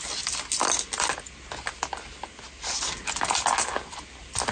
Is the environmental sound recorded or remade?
recorded